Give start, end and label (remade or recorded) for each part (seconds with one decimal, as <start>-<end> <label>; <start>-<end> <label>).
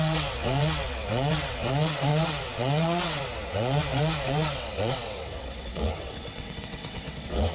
0.0-7.5 remade